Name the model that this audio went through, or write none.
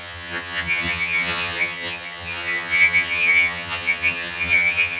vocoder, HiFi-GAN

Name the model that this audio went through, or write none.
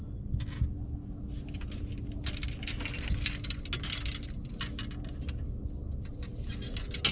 none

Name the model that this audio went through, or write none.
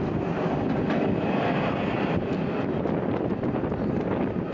none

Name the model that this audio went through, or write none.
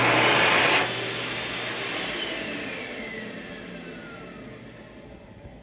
none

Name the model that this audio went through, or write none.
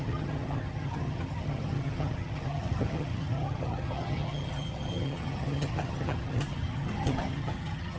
vocoder, HiFi-GAN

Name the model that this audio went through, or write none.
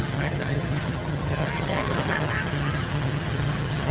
vocoder, HiFi-GAN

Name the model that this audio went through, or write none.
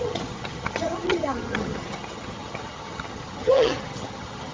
vocoder, HiFi-GAN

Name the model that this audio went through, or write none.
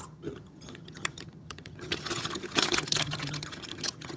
vocoder, HiFi-GAN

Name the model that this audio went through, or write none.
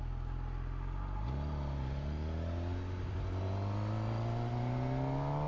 none